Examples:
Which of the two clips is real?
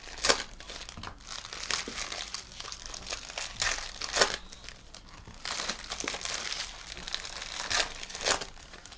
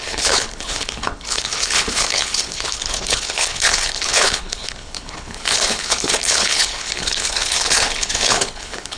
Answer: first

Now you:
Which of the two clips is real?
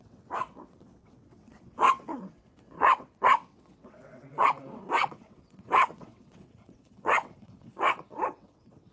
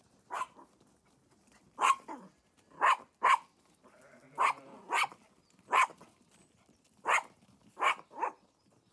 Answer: second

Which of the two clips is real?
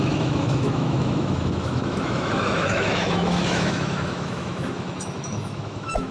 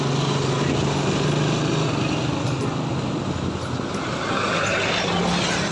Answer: second